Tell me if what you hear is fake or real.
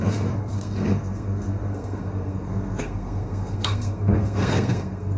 fake